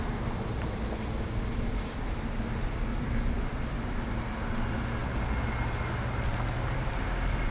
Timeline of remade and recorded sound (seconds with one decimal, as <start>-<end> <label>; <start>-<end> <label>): 0.0-2.9 recorded; 2.9-4.1 remade; 4.1-7.5 recorded